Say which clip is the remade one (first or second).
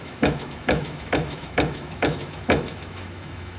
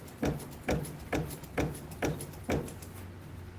first